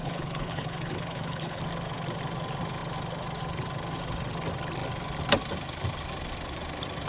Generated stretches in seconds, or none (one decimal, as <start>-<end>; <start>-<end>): 0.0-1.6